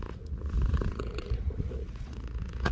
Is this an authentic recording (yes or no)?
no